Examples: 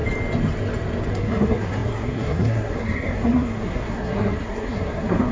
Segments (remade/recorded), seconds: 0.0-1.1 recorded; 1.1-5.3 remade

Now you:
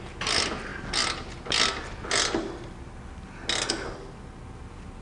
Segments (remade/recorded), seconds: 0.0-5.0 recorded

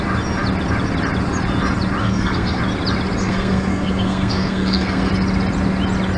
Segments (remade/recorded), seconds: 0.0-2.0 recorded; 2.0-2.6 remade; 2.6-3.2 recorded; 3.2-5.1 remade; 5.1-6.2 recorded